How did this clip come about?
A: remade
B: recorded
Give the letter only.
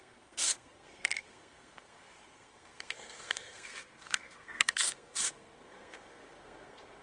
A